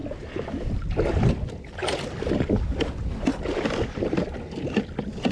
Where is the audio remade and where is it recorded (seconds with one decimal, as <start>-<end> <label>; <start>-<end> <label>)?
0.0-5.3 recorded